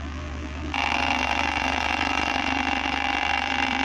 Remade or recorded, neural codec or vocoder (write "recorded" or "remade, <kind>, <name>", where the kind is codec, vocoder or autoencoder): remade, vocoder, BigVGAN v2